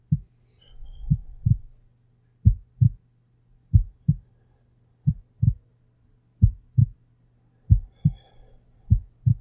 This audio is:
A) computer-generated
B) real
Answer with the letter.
B